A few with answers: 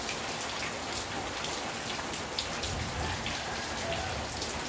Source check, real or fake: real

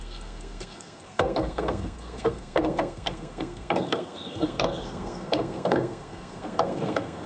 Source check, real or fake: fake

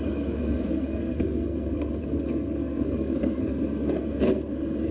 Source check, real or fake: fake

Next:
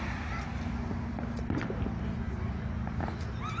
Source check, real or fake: real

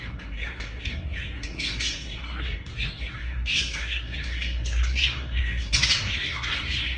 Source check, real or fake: fake